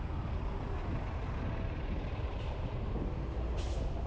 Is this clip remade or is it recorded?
recorded